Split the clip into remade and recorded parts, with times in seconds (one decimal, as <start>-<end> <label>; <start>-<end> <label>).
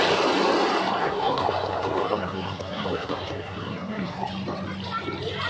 0.0-1.0 recorded; 1.0-4.3 remade; 4.3-5.5 recorded